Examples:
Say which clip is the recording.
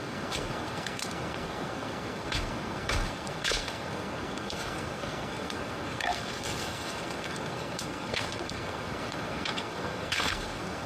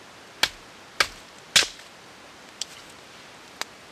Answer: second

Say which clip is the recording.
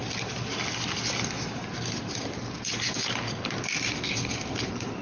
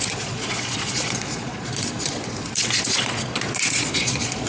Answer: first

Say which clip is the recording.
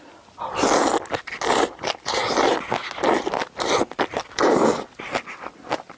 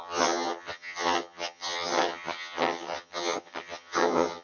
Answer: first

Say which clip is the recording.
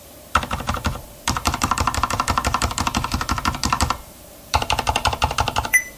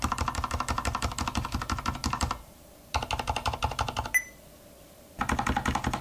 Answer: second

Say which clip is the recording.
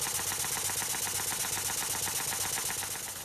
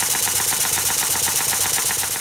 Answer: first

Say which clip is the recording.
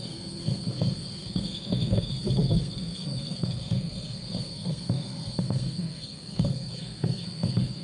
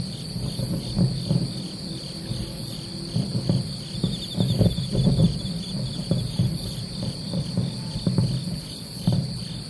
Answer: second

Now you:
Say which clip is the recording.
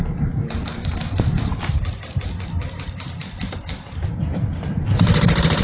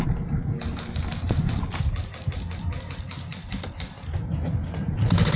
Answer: second